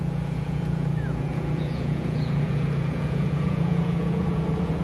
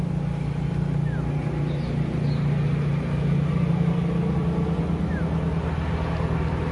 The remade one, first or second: first